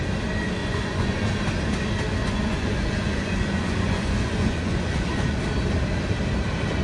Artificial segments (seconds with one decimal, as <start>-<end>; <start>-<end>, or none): 0.6-1.3; 2.2-5.4